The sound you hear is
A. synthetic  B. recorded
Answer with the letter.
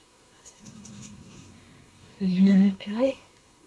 A